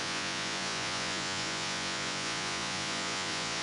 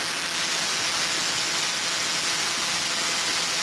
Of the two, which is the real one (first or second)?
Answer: second